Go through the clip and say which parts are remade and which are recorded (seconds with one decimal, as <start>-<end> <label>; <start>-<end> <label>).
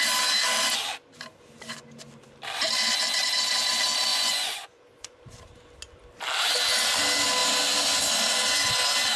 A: 0.0-4.1 recorded; 4.1-5.2 remade; 5.2-9.2 recorded